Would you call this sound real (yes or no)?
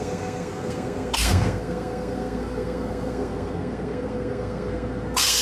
no